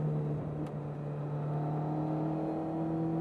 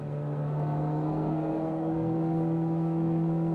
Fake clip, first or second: second